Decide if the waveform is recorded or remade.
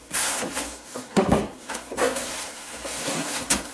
remade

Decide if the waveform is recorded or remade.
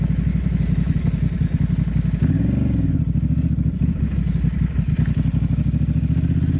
recorded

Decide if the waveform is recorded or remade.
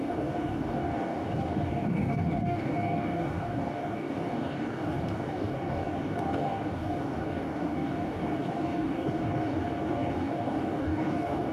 remade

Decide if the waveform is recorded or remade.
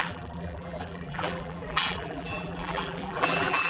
remade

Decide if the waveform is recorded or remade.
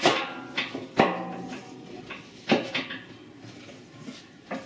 recorded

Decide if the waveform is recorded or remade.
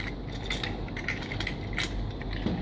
recorded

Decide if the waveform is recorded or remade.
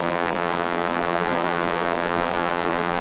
remade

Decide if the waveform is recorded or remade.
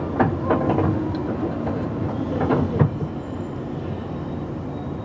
recorded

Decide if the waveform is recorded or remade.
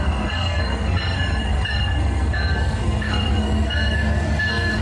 remade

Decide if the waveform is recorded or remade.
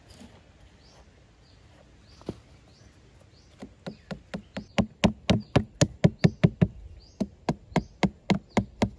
recorded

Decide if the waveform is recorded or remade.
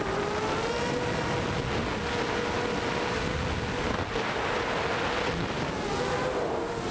recorded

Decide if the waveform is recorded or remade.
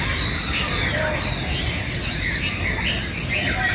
recorded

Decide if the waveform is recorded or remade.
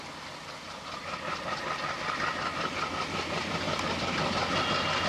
recorded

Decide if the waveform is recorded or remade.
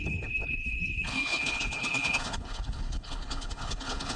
remade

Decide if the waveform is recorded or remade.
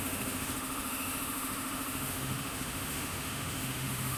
remade